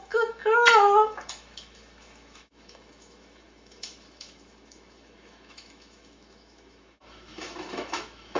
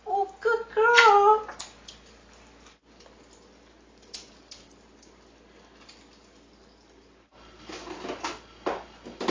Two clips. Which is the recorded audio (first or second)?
second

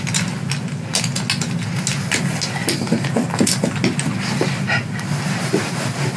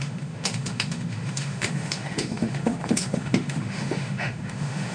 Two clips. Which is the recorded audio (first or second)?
first